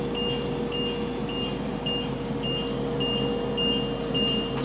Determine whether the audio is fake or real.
real